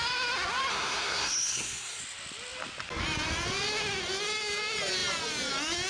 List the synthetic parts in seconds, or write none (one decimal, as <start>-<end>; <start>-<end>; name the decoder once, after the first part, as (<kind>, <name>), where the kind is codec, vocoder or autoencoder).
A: 0.7-2.0 (codec, SNAC)